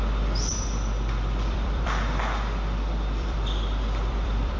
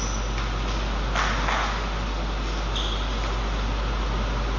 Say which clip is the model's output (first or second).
first